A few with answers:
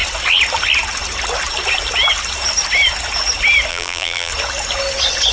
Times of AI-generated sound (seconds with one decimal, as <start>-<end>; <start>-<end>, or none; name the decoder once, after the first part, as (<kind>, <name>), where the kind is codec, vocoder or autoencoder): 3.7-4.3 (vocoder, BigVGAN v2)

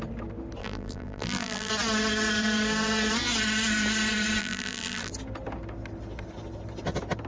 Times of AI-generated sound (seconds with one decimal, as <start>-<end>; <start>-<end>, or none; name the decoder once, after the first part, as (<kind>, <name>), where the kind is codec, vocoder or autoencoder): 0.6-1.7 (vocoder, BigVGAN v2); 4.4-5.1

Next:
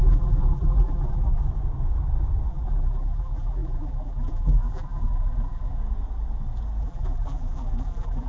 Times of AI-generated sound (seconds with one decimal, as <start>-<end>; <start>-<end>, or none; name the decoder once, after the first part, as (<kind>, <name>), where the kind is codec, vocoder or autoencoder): 0.0-1.4 (vocoder, BigVGAN v2); 2.5-5.8; 6.8-8.3

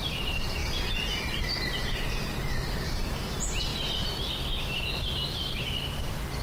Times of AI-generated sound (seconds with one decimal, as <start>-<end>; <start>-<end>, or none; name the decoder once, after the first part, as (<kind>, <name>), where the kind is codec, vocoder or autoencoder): 0.0-3.7 (vocoder, BigVGAN v2); 5.6-6.4

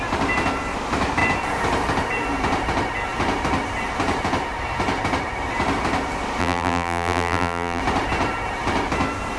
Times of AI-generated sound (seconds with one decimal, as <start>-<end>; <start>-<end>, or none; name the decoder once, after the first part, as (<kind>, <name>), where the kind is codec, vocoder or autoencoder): 6.4-7.8 (vocoder, BigVGAN v2)